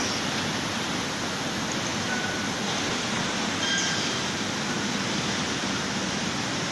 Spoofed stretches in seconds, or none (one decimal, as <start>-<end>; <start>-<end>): none